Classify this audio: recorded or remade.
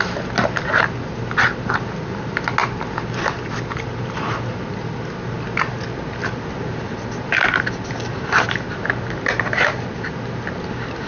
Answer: recorded